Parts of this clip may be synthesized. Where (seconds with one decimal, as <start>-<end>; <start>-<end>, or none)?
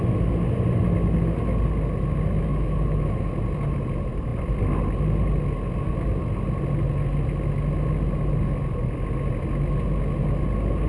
2.5-3.3